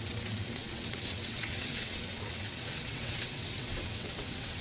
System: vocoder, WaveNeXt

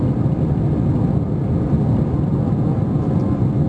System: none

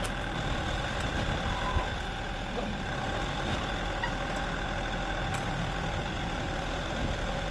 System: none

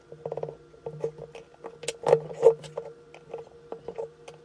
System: none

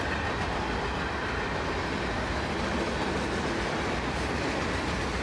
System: none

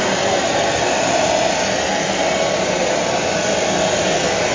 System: none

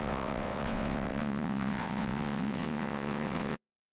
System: vocoder, WaveNeXt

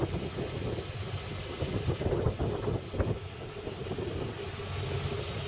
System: none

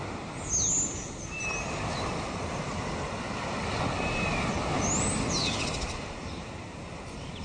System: none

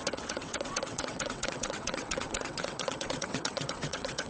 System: vocoder, WaveNeXt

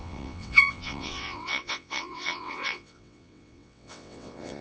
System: vocoder, WaveNeXt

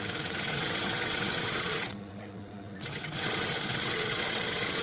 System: vocoder, WaveNeXt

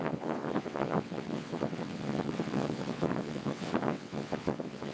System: vocoder, WaveNeXt